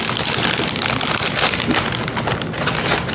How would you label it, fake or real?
real